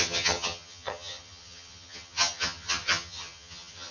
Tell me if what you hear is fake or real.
fake